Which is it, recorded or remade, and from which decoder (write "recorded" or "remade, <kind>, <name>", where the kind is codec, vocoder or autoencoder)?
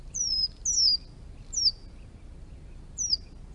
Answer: recorded